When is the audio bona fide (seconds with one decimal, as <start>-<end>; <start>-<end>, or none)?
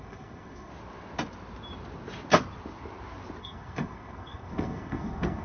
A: 0.7-3.4